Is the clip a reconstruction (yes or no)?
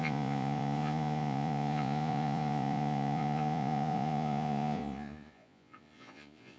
yes